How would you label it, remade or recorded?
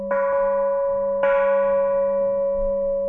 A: recorded